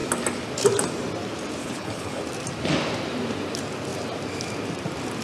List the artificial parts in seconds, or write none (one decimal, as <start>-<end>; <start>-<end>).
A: 1.6-2.2